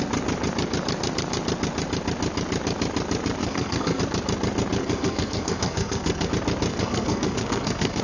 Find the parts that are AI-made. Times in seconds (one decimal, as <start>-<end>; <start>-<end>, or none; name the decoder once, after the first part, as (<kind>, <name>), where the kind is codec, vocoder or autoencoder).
3.4-4.0 (codec, SNAC); 4.8-6.3; 6.7-8.0

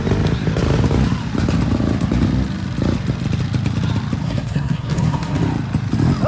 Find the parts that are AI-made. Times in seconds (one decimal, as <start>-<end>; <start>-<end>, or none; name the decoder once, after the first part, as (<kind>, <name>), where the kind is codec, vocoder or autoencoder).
4.2-5.4 (codec, SNAC)

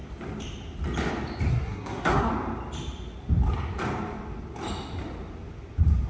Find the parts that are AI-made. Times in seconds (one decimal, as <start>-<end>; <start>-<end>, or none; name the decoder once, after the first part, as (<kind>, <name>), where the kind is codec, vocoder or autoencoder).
1.5-2.3 (codec, SNAC)

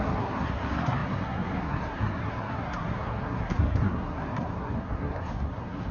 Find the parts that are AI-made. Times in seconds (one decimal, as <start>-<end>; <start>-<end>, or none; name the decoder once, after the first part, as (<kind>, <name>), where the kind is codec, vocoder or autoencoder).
0.0-5.9 (codec, SNAC)